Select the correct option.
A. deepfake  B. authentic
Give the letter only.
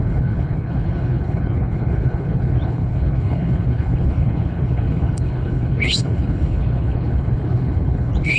A